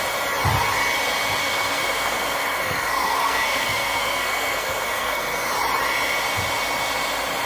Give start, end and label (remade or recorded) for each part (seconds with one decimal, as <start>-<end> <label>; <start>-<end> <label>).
0.0-1.4 recorded; 1.4-5.5 remade; 5.5-7.5 recorded

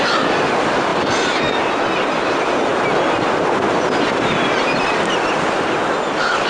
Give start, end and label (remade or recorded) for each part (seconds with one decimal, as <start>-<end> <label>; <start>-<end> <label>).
0.0-6.5 recorded

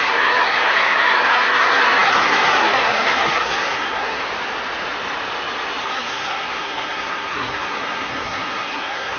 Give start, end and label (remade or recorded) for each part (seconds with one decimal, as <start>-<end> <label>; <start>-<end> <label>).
0.0-4.2 remade; 4.2-5.8 recorded; 5.8-9.2 remade

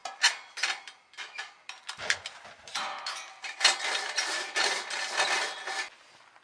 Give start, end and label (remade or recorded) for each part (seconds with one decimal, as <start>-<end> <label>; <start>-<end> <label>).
0.0-6.4 recorded

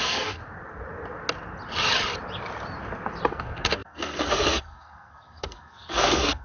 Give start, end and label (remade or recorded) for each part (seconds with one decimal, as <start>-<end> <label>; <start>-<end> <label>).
0.0-0.4 remade; 0.4-3.3 recorded; 3.3-6.4 remade

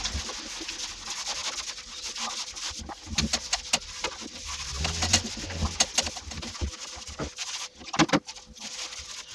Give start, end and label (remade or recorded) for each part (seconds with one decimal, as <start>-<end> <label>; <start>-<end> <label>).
0.0-9.3 recorded

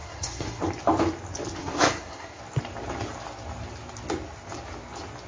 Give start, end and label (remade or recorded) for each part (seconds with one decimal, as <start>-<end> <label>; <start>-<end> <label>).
0.0-0.6 remade; 0.6-1.6 recorded; 1.6-2.4 remade; 2.4-5.3 recorded

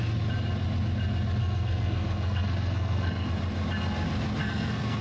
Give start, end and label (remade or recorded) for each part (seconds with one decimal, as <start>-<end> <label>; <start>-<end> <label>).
0.0-1.4 recorded; 1.4-3.3 remade; 3.3-4.4 recorded; 4.4-5.0 remade